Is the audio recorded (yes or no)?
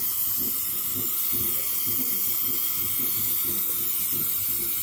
yes